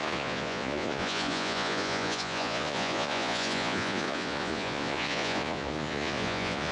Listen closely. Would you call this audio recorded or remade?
remade